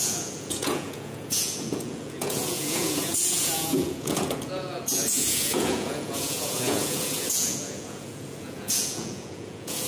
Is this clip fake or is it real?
fake